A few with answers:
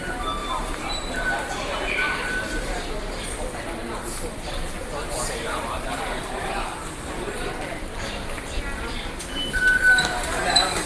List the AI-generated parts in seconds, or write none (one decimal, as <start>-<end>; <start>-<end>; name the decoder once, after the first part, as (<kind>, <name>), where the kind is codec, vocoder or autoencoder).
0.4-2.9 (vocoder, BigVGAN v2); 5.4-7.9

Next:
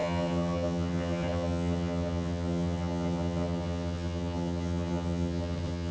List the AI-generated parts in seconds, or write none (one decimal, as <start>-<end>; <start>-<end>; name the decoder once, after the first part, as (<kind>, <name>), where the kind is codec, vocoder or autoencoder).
0.0-5.9 (vocoder, HiFi-GAN)

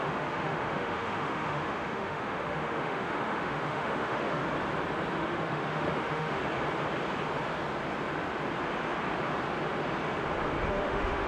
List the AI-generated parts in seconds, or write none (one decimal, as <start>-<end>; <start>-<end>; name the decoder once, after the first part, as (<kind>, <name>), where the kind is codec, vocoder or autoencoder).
0.0-4.4 (autoencoder, DAC-VAE); 5.1-6.4; 10.7-11.3

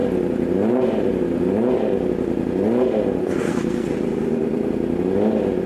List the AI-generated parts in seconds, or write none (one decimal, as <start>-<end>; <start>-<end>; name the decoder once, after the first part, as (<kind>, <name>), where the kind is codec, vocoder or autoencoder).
3.2-3.9 (codec, SNAC)

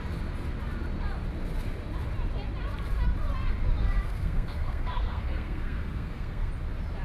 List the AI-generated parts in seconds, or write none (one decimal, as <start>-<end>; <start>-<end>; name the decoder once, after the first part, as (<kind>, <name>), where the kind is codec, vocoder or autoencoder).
3.8-6.5 (codec, SNAC)

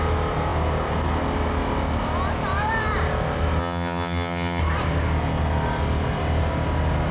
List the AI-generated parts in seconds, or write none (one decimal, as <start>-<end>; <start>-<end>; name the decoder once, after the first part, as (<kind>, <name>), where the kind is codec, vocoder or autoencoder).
3.6-4.6 (vocoder, HiFi-GAN)

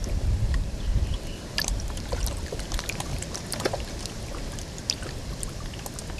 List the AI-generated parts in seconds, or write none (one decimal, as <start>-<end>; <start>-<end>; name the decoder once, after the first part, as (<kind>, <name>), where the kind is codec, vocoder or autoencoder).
0.0-3.2 (vocoder, BigVGAN v2)

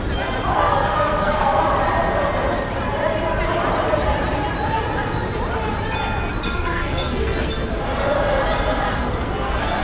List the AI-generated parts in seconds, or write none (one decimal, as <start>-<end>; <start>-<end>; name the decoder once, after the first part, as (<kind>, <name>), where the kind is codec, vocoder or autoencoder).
0.5-1.6 (codec, SNAC); 6.4-7.7; 9.0-9.8